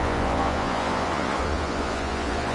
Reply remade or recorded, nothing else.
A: remade